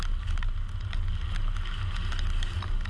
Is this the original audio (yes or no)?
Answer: yes